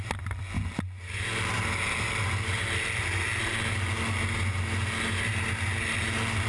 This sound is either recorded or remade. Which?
recorded